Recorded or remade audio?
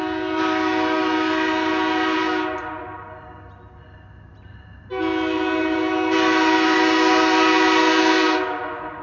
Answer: recorded